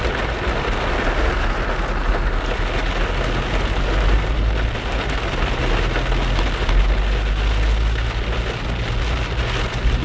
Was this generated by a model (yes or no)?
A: no